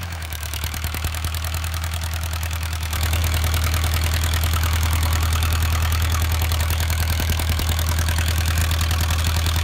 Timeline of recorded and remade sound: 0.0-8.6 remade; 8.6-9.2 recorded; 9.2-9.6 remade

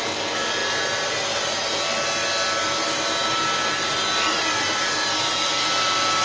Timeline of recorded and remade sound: 0.0-6.2 recorded

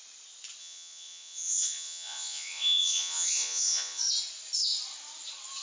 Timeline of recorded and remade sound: 0.0-0.6 recorded; 0.6-4.0 remade; 4.0-5.6 recorded

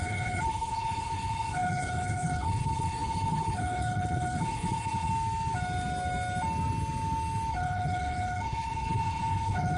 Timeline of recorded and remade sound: 0.0-5.1 remade; 5.1-7.5 recorded; 7.5-9.8 remade